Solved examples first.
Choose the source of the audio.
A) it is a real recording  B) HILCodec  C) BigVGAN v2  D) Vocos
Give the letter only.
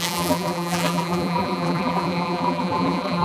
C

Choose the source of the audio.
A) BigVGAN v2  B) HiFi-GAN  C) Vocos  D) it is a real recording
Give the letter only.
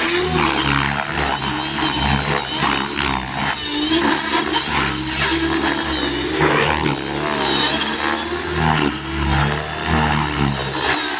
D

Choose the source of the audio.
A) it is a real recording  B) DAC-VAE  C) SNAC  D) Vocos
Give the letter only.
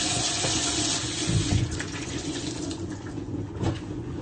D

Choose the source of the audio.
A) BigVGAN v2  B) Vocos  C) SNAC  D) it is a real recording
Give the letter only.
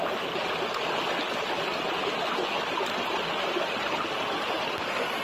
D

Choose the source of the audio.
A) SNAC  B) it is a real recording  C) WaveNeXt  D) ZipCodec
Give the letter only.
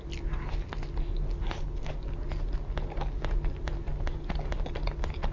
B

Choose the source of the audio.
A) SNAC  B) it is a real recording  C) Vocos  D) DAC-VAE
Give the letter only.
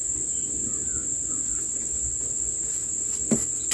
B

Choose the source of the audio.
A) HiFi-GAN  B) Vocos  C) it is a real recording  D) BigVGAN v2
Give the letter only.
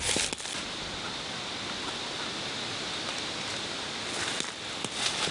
C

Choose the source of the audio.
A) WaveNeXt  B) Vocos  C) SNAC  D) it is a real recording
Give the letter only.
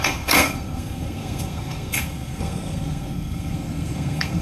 C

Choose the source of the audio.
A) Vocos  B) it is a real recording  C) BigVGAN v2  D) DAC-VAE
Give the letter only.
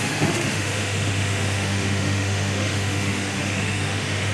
D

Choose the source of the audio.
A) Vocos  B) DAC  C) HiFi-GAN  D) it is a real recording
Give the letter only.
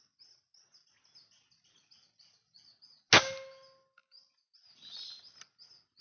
D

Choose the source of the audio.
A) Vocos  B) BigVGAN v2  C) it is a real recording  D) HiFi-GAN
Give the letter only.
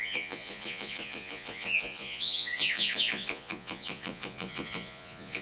A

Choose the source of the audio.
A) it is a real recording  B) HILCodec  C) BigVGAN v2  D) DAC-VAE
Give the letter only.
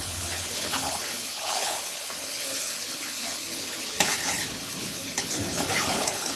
B